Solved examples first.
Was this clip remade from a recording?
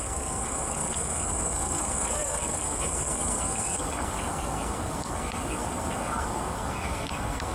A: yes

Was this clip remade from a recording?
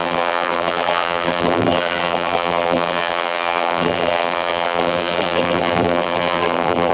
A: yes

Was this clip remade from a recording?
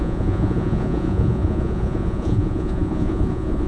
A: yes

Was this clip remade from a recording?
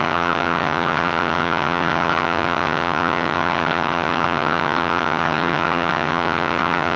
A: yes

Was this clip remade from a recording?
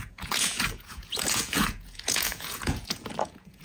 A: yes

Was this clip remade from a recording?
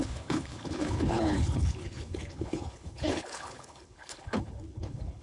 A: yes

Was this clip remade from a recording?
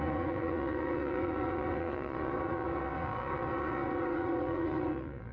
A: yes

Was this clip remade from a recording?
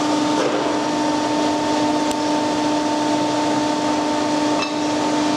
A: no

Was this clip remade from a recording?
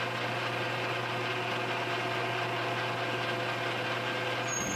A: no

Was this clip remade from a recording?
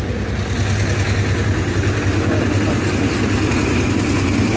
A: no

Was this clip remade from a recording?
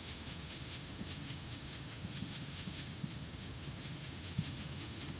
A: yes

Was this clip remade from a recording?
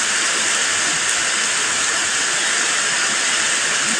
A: no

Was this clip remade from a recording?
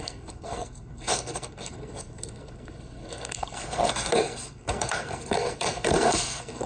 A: yes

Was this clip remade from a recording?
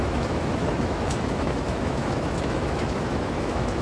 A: yes